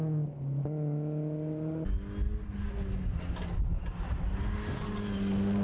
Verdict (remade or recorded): recorded